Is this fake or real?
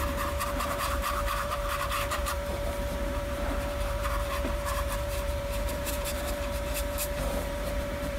fake